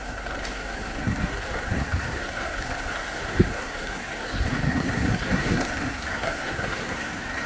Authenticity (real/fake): fake